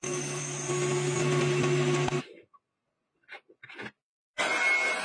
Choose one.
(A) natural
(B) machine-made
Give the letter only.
A